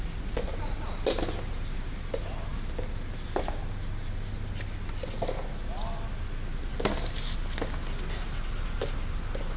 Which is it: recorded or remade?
recorded